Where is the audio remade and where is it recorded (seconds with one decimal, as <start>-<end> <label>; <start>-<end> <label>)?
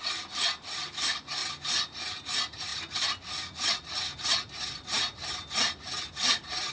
0.0-6.7 recorded